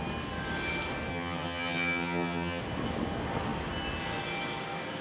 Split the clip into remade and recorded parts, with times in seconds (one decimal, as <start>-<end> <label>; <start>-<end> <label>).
0.0-1.1 recorded; 1.1-2.6 remade; 2.6-5.0 recorded

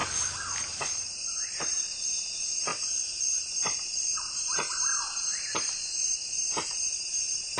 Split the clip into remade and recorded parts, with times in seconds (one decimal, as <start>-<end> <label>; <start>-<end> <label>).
0.0-0.6 recorded; 0.6-2.7 remade; 2.7-3.5 recorded; 3.5-7.6 remade

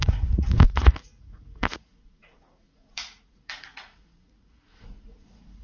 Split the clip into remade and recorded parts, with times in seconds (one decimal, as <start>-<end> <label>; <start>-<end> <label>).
0.0-5.6 remade

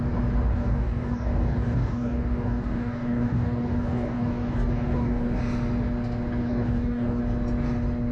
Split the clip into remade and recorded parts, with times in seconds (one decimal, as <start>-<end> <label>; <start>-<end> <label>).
0.0-0.5 recorded; 0.5-5.4 remade; 5.4-6.4 recorded; 6.4-7.2 remade; 7.2-8.1 recorded

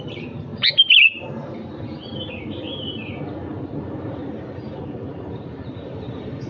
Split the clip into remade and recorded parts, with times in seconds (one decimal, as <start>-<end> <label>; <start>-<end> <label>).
0.0-4.2 remade; 4.2-5.3 recorded; 5.3-6.5 remade